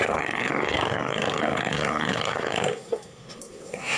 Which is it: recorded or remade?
remade